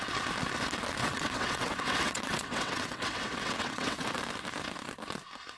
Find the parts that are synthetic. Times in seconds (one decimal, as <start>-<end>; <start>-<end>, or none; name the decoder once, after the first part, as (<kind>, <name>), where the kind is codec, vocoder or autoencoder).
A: 1.0-4.2 (vocoder, WaveNeXt)